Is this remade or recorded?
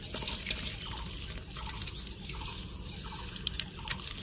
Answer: recorded